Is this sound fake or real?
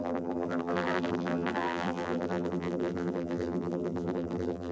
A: fake